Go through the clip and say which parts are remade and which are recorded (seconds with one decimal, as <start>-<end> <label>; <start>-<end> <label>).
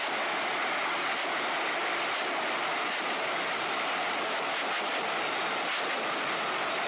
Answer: 0.0-6.9 recorded